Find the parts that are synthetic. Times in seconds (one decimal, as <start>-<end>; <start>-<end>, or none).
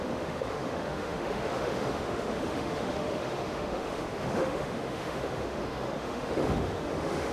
0.0-7.3